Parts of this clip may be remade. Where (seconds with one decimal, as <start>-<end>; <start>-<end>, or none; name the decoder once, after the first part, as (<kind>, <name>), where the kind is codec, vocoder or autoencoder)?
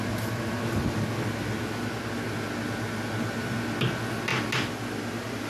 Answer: none